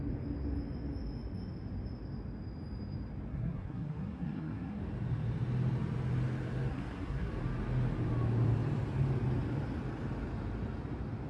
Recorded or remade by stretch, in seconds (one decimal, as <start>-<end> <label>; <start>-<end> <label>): 0.0-3.3 recorded; 3.3-4.8 remade; 4.8-6.7 recorded; 6.7-7.3 remade; 7.3-11.3 recorded